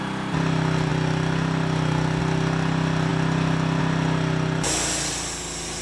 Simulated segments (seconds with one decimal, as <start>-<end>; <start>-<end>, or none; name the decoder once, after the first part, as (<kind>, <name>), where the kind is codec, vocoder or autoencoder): none